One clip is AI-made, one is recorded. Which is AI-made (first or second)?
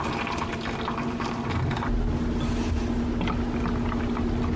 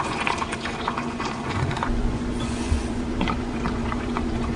second